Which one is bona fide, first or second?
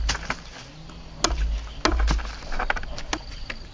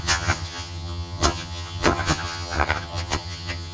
first